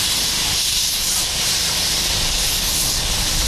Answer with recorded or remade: remade